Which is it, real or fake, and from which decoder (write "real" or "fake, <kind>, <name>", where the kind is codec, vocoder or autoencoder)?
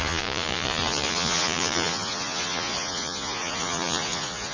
fake, vocoder, Vocos